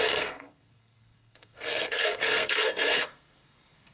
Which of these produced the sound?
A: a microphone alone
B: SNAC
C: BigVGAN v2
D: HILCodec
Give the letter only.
B